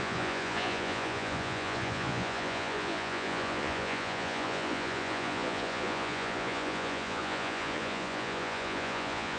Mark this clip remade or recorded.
remade